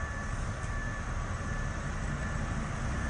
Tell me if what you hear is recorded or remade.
remade